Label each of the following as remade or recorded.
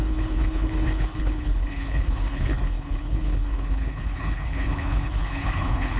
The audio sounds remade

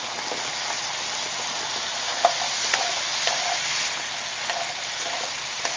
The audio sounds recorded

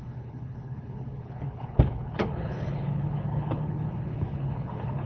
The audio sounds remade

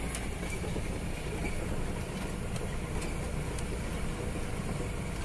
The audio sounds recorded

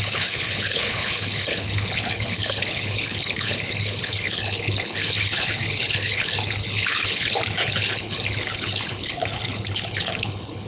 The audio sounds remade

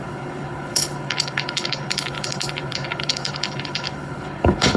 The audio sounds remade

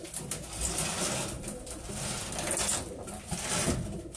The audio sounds recorded